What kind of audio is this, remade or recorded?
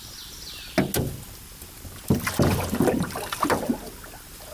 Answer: recorded